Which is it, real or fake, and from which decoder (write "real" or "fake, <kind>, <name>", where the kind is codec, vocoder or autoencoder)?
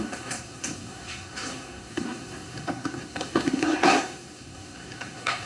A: fake, codec, SNAC